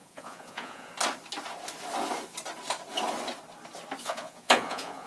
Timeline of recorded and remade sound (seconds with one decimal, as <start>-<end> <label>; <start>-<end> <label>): 0.0-0.9 remade; 0.9-4.0 recorded; 4.0-5.1 remade